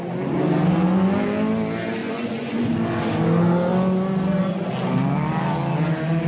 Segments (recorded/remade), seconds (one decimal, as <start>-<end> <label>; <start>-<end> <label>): 0.0-2.0 recorded; 2.0-2.7 remade; 2.7-6.3 recorded